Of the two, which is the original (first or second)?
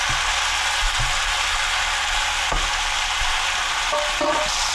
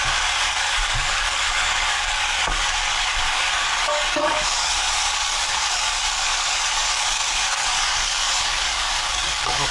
first